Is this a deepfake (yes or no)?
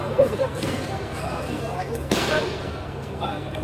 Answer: yes